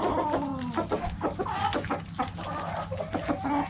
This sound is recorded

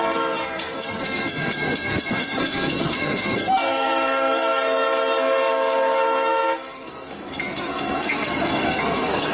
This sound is remade